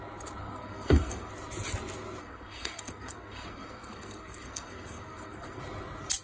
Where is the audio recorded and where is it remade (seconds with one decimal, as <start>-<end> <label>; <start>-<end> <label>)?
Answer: 0.0-0.4 recorded; 0.4-1.3 remade; 1.3-2.2 recorded; 2.2-5.6 remade; 5.6-6.2 recorded